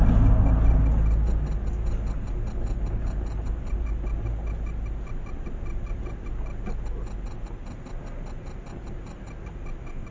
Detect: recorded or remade recorded